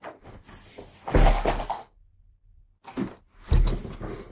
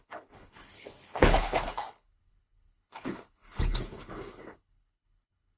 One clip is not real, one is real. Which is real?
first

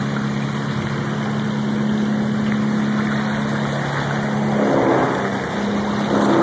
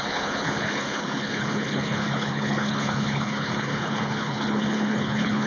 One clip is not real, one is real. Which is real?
first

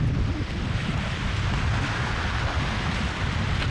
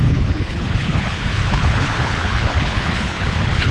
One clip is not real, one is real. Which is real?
first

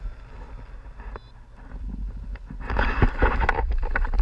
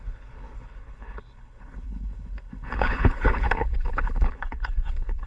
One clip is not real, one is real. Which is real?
first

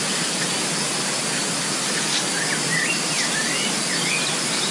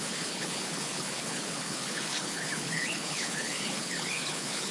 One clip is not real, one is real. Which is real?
first